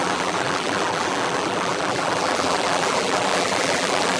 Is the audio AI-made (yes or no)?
yes